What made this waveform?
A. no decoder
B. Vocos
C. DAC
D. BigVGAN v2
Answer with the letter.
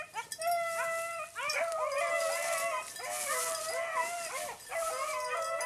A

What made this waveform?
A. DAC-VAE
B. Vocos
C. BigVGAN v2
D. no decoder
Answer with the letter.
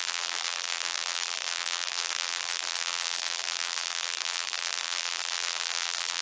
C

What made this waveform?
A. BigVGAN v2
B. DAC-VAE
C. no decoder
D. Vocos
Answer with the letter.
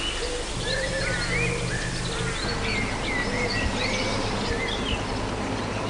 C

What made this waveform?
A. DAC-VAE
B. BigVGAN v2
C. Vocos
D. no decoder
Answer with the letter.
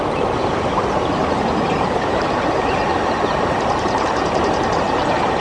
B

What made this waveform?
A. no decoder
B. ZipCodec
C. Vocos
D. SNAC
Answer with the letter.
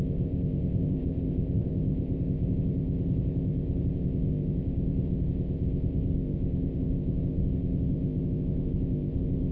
B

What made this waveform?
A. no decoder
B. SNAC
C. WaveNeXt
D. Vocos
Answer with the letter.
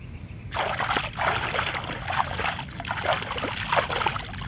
A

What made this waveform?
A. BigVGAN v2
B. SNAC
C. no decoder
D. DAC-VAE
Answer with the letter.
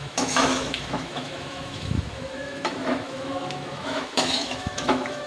D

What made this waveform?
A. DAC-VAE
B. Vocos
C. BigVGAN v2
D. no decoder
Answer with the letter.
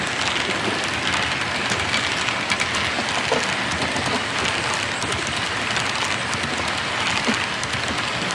D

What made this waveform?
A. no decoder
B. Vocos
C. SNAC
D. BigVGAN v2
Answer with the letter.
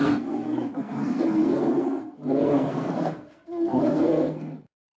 C